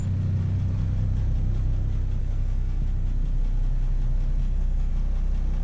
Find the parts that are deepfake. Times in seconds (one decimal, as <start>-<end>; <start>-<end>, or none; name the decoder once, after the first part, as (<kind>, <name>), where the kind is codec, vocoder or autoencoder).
2.2-2.8 (codec, SNAC); 4.4-4.9